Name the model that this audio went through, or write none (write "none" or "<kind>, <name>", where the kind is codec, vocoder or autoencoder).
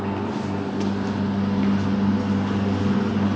none